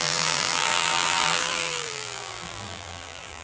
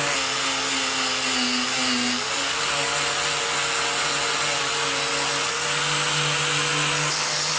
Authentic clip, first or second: second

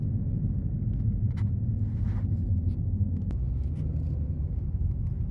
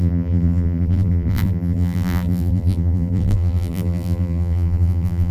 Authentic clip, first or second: first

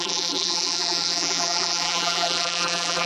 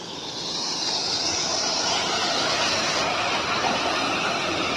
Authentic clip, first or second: second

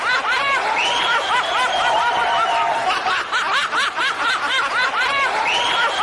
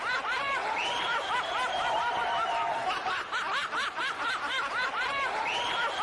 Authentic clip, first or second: first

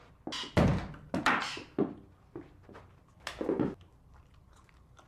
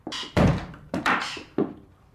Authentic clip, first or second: first